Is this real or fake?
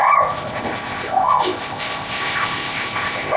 fake